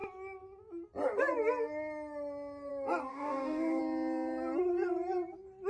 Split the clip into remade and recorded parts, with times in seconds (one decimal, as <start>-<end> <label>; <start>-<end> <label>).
0.0-3.1 recorded; 3.1-3.8 remade; 3.8-5.7 recorded